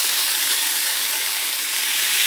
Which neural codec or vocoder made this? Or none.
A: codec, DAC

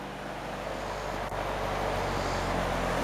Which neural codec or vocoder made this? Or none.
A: none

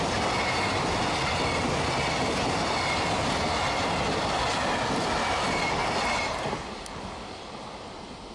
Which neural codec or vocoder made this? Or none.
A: none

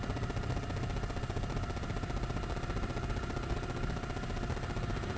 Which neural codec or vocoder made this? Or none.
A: none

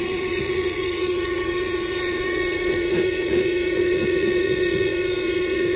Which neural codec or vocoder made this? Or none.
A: vocoder, Vocos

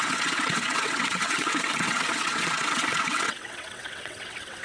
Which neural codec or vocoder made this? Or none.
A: vocoder, WaveNeXt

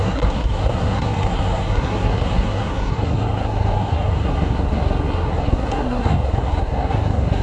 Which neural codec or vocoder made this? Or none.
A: codec, SNAC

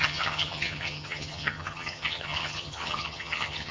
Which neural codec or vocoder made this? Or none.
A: vocoder, HiFi-GAN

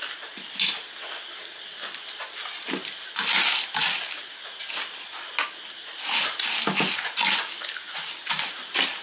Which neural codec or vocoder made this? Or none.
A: none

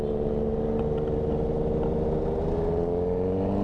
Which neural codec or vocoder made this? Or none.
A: none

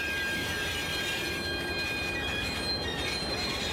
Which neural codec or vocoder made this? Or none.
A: none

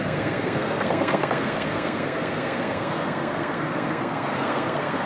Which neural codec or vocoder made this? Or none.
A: codec, SNAC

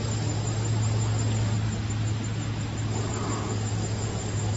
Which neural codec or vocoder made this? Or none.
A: none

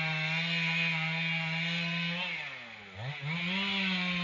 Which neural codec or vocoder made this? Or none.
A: none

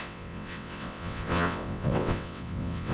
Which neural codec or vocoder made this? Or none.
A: vocoder, WaveNeXt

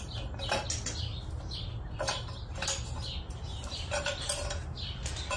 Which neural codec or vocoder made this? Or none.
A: none